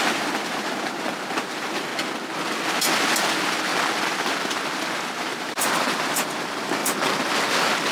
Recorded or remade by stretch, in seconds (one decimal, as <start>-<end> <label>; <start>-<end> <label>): 0.0-1.9 remade; 1.9-3.2 recorded; 3.2-3.7 remade; 3.7-5.4 recorded; 5.4-6.8 remade; 6.8-7.9 recorded